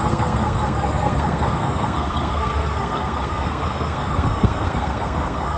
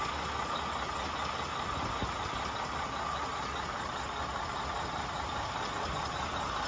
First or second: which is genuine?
second